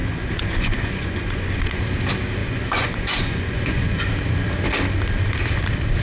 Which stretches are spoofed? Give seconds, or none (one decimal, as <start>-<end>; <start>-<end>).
0.0-1.8; 2.4-4.1